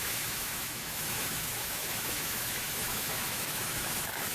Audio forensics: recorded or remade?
remade